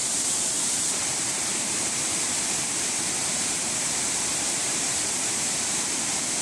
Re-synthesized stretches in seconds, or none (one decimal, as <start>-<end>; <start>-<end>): 0.0-2.4; 3.2-5.9